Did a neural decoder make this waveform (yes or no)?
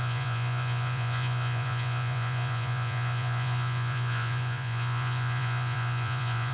yes